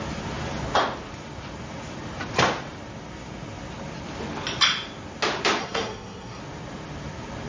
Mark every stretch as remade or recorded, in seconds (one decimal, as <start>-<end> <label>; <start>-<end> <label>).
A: 0.0-5.6 recorded; 5.6-6.4 remade; 6.4-7.5 recorded